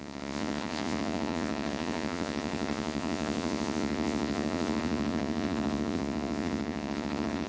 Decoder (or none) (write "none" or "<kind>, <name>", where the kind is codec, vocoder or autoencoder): vocoder, Vocos